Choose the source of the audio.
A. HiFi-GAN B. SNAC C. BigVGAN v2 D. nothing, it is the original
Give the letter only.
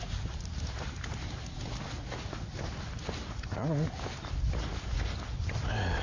D